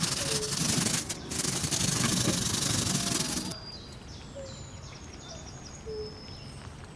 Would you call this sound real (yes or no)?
yes